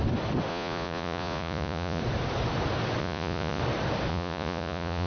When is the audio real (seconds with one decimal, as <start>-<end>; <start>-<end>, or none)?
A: 0.0-0.5; 2.0-3.0; 3.6-4.1